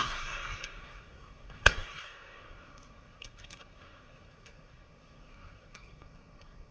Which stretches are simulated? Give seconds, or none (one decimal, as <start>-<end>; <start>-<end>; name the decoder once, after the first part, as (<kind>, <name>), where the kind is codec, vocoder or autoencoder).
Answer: 0.0-6.7 (codec, SNAC)